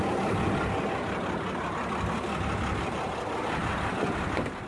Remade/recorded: recorded